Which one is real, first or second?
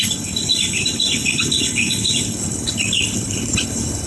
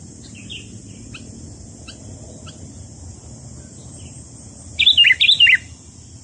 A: second